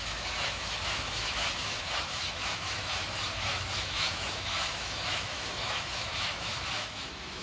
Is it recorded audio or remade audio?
remade